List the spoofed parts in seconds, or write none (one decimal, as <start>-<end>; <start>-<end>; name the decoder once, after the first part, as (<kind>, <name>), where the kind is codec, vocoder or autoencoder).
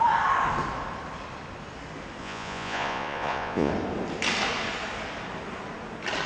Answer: 2.2-3.7 (vocoder, Vocos)